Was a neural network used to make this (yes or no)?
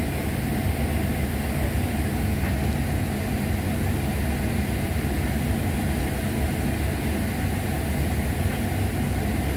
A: no